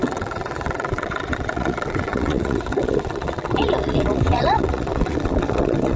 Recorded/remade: remade